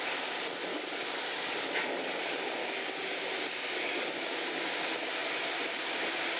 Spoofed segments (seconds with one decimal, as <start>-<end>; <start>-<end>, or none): 0.7-1.7; 2.6-4.6